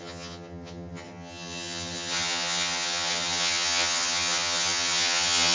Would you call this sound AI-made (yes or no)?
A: yes